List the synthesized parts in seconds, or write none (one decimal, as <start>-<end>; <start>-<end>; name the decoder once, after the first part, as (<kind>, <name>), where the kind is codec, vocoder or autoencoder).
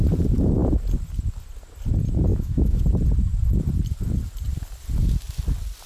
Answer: 2.3-2.8 (autoencoder, DAC-VAE)